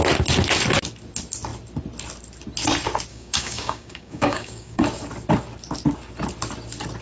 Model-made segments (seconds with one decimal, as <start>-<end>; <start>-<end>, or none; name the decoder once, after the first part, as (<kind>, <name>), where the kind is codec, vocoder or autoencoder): 3.1-4.8 (codec, DAC)